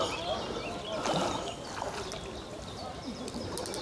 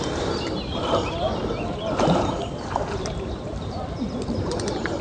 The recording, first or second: first